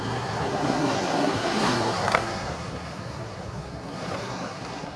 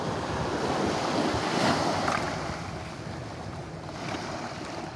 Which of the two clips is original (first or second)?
second